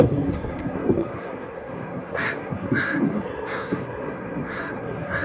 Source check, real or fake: fake